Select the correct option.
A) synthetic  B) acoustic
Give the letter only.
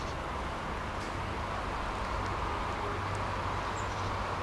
B